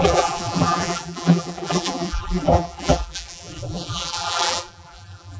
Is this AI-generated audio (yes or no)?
yes